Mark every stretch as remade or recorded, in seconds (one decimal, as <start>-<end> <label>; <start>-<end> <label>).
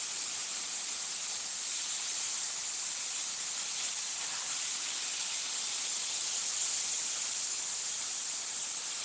0.0-3.3 remade; 3.3-4.2 recorded; 4.2-6.6 remade; 6.6-8.5 recorded; 8.5-9.0 remade